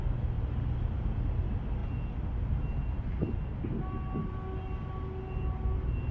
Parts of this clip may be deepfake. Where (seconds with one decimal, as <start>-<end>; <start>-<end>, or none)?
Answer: none